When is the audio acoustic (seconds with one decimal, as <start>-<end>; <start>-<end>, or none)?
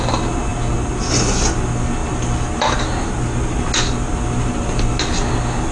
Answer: 0.0-5.7